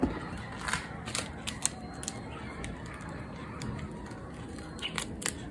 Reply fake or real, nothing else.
real